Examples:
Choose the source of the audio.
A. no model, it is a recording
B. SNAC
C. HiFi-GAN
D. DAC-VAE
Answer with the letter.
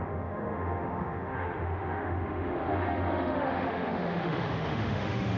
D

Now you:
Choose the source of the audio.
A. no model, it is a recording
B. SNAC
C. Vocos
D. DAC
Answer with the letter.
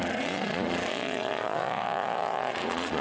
C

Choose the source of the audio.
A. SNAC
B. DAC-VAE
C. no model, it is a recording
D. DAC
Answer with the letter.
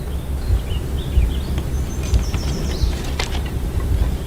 C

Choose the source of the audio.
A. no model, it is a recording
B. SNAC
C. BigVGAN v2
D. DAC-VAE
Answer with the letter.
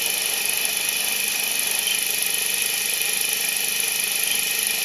A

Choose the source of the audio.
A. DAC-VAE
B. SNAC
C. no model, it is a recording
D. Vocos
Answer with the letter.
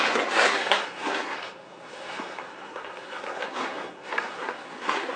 B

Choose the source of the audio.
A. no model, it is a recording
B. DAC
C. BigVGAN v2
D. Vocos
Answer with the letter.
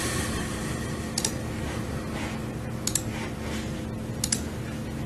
A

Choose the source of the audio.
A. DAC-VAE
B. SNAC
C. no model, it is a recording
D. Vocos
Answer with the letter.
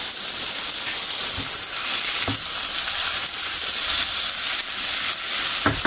C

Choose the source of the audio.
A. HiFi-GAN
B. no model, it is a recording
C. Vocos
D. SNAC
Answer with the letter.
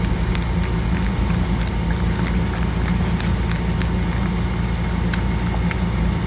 B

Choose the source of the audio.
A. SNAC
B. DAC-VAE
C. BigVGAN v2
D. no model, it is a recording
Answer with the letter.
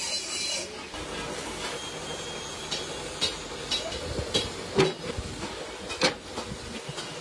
D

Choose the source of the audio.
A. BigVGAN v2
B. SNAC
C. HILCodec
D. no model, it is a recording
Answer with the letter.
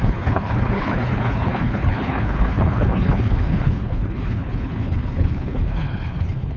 C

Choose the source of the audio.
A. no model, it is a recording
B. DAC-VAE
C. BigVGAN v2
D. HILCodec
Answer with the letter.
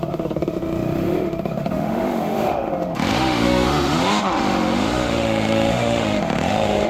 B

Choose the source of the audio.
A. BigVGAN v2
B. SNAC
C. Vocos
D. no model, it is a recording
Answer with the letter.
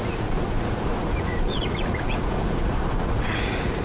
C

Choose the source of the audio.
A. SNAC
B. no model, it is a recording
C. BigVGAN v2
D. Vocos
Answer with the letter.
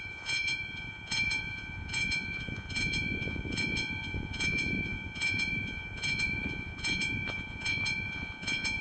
D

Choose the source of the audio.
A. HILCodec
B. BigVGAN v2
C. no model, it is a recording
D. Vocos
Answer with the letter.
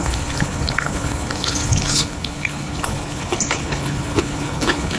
A